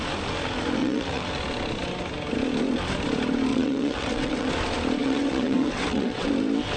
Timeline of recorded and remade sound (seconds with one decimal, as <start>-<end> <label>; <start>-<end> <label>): 0.0-0.8 recorded; 0.8-1.3 remade; 1.3-3.5 recorded; 3.5-4.5 remade; 4.5-5.0 recorded; 5.0-6.3 remade; 6.3-6.8 recorded